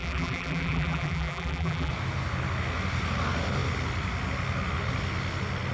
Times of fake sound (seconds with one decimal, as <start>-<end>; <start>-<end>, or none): 0.0-1.9